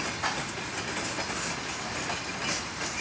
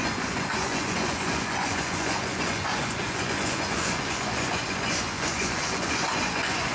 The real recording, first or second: first